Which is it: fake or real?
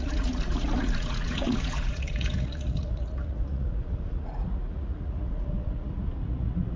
fake